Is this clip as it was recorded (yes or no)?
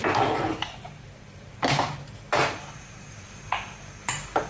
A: no